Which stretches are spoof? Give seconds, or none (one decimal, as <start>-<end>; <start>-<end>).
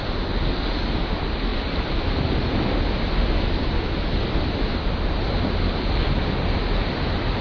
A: 1.5-5.9